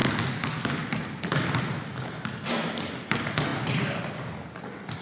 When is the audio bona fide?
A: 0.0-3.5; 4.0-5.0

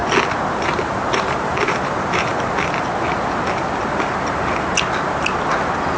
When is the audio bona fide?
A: 0.0-1.1; 2.3-6.0

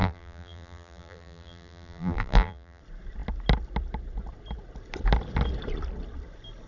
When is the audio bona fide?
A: 2.8-6.7

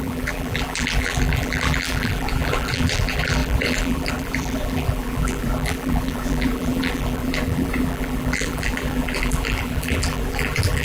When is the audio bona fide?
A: none

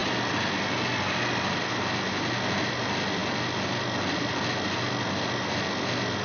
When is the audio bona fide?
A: 0.0-6.2

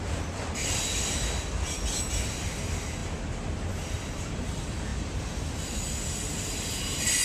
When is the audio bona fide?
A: 0.0-7.2